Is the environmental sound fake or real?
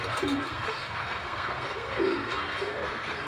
fake